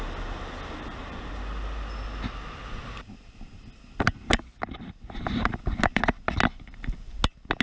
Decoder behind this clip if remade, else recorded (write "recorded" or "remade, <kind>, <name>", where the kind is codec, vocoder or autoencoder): recorded